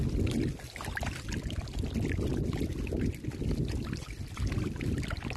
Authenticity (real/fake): real